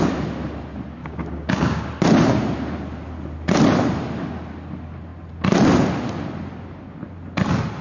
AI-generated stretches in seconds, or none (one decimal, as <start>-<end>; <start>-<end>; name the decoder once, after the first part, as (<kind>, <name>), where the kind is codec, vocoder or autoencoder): 1.0-1.9 (codec, DAC)